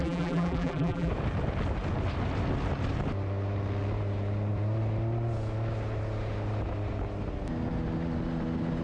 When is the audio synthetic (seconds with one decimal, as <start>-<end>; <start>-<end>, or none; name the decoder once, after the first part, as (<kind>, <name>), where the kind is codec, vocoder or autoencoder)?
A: 0.0-1.1 (vocoder, BigVGAN v2)

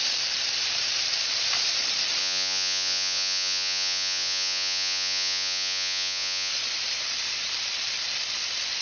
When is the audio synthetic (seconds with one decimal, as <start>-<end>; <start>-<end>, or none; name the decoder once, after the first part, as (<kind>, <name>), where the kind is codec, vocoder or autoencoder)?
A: 2.2-6.5 (vocoder, Vocos)

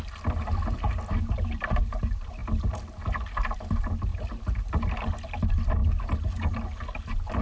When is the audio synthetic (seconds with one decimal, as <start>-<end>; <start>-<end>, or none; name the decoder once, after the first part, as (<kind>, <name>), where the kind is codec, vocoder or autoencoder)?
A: none

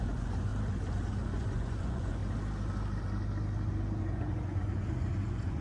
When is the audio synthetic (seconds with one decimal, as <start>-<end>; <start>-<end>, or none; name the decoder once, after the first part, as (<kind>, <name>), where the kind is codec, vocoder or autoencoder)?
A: 0.0-0.5 (vocoder, Vocos); 1.1-2.2; 4.0-5.6

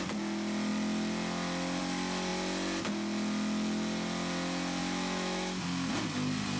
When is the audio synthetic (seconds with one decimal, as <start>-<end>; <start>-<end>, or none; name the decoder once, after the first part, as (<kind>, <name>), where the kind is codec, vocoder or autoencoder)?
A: 4.8-5.6 (autoencoder, DAC-VAE)

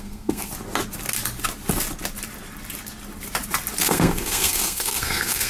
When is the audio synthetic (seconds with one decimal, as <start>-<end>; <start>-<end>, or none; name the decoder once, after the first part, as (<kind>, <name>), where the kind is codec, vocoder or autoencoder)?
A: 0.0-0.5 (codec, SNAC); 3.8-5.5